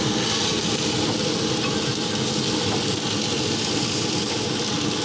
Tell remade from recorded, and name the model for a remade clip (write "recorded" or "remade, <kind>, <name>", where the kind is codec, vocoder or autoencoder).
recorded